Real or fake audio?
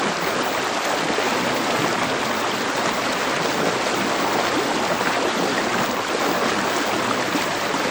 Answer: real